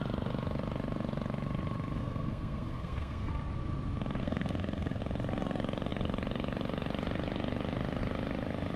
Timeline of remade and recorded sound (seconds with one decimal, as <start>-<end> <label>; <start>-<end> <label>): 0.0-2.0 recorded; 2.0-3.3 remade; 3.3-4.2 recorded; 4.2-5.0 remade; 5.0-8.8 recorded